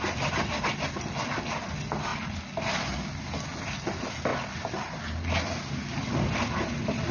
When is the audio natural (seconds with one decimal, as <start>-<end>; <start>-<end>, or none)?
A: 0.0-7.1